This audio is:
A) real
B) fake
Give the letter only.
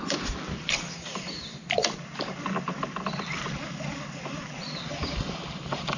B